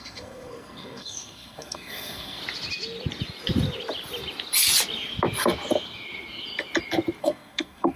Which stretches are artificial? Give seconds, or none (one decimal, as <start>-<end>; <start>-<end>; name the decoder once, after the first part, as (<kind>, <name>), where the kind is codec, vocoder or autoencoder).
0.0-2.4 (codec, SNAC); 7.2-8.0